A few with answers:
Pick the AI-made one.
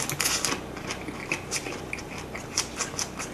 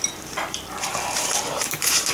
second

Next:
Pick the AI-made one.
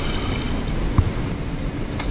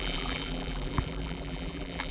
second